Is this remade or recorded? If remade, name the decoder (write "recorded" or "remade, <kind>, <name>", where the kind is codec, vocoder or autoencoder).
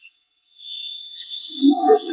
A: remade, vocoder, WaveNeXt